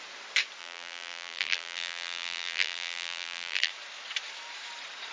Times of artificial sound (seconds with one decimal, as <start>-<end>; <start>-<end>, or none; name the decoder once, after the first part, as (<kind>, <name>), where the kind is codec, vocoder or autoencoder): 0.6-3.7 (vocoder, BigVGAN v2)